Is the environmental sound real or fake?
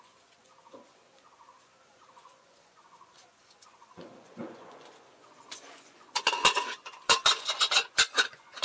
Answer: fake